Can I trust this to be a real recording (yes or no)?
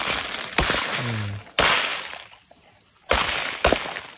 yes